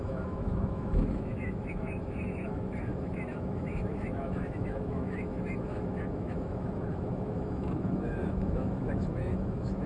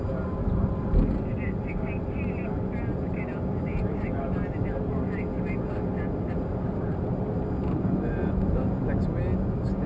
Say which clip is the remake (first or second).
first